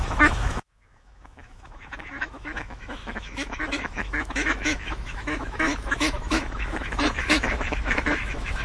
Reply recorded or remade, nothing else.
remade